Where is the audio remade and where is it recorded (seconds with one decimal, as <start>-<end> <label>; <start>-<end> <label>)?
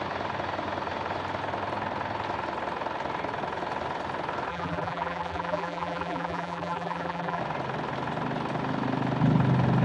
0.0-4.5 recorded; 4.5-7.4 remade; 7.4-9.8 recorded